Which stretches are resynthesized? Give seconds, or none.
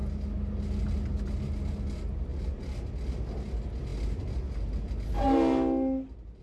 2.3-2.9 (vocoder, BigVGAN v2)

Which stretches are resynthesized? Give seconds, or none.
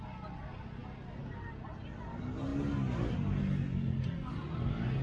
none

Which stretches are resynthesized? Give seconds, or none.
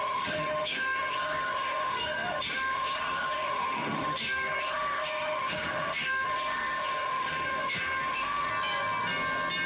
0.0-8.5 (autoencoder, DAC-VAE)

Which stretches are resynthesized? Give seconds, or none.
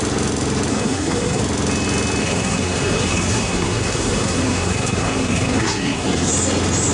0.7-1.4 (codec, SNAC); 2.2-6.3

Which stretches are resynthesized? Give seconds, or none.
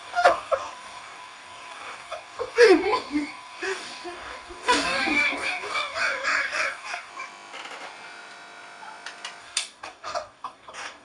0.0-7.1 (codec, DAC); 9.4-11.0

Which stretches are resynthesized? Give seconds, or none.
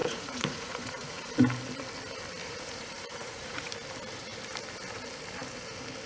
0.0-1.2 (vocoder, Vocos); 2.4-3.7